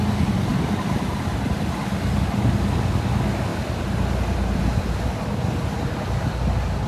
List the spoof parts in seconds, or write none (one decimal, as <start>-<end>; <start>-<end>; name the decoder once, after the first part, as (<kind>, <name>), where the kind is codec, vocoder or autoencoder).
3.5-6.3 (vocoder, BigVGAN v2)